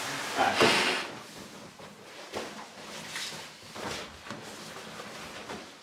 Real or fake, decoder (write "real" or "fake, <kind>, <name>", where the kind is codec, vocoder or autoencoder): real